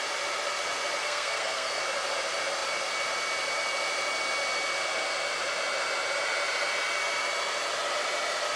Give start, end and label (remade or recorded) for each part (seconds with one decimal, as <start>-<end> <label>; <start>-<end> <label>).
0.0-1.0 recorded; 1.0-1.8 remade; 1.8-8.6 recorded